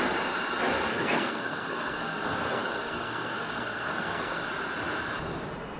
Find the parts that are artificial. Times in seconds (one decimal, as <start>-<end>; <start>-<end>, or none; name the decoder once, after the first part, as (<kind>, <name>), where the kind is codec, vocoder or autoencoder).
0.9-4.4 (codec, SNAC)